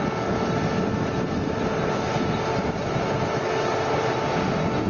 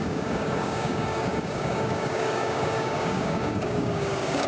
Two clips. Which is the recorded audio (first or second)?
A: first